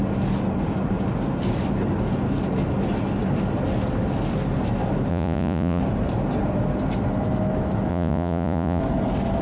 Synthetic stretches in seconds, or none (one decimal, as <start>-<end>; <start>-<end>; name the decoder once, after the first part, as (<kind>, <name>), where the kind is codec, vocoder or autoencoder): 5.1-5.8 (vocoder, Vocos); 7.9-8.8